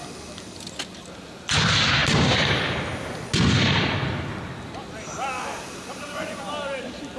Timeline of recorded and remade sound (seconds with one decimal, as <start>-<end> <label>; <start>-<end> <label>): 0.0-7.2 recorded